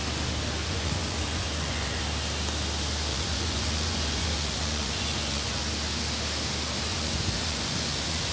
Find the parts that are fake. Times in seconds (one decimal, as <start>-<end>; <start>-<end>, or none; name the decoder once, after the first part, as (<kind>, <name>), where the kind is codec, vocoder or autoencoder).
0.6-2.0 (vocoder, Vocos); 3.1-5.6; 6.9-8.3

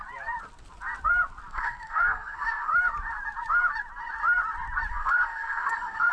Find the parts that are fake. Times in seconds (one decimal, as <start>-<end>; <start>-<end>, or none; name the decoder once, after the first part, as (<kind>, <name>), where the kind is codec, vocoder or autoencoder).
1.5-2.7 (codec, SNAC); 4.9-6.1